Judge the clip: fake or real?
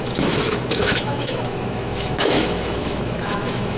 fake